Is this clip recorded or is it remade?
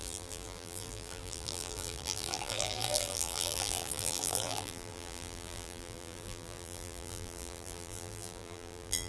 remade